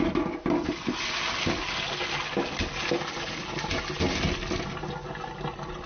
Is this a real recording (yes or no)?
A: yes